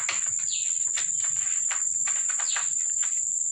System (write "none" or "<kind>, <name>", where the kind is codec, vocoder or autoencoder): vocoder, BigVGAN v2